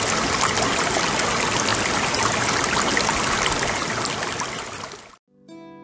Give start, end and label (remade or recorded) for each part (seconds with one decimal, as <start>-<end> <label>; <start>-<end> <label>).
0.0-5.8 recorded